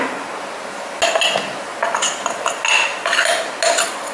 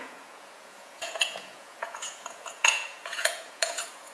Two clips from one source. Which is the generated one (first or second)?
second